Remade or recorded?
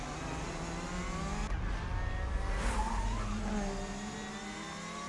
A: recorded